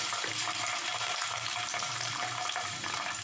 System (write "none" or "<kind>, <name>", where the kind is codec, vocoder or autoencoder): vocoder, BigVGAN v2